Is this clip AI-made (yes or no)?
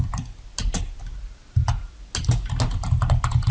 no